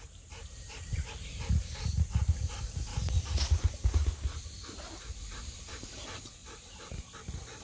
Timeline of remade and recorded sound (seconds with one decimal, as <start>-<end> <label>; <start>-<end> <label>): 0.0-2.9 remade; 2.9-5.2 recorded; 5.2-6.4 remade; 6.4-7.6 recorded

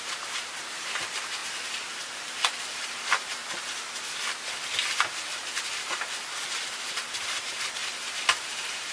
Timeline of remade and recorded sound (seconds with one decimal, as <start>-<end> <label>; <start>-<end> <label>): 0.0-3.4 remade; 3.4-7.1 recorded; 7.1-8.9 remade